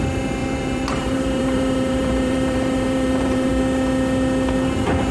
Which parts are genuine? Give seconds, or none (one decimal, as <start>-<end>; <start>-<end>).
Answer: 0.0-0.4; 3.5-5.1

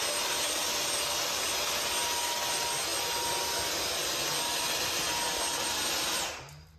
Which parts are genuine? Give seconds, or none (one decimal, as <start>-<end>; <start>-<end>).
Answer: 0.0-6.8